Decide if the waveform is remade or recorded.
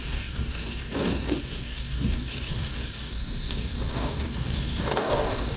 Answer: remade